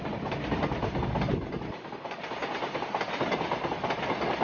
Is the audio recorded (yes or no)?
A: yes